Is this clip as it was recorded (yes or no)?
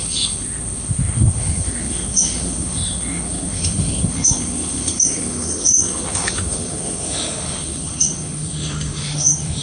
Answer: no